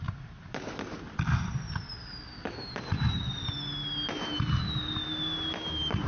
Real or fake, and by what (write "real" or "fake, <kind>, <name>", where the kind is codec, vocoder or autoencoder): real